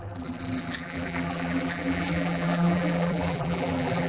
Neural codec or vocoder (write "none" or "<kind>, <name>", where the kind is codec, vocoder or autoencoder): vocoder, BigVGAN v2